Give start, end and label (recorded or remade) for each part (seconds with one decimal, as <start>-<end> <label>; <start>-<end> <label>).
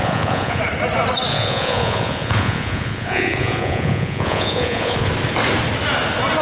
0.0-0.6 remade; 0.6-1.3 recorded; 1.3-5.1 remade; 5.1-6.4 recorded